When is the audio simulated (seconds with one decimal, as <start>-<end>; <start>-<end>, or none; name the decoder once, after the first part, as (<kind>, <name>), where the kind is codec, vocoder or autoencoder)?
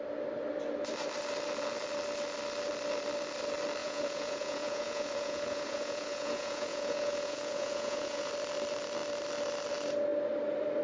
3.8-8.3 (vocoder, Vocos)